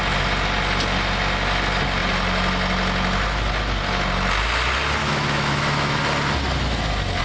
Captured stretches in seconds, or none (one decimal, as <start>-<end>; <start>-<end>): 0.0-5.0; 6.0-7.2

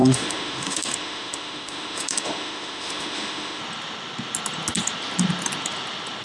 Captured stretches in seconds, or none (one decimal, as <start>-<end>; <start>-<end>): 3.6-6.2